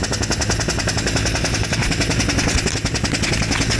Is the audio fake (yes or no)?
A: no